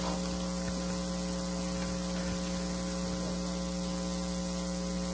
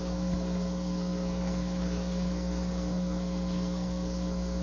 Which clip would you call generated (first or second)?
second